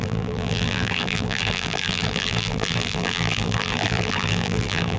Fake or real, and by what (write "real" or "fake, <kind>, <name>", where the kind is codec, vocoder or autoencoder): fake, vocoder, BigVGAN v2